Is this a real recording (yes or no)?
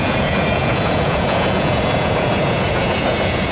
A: no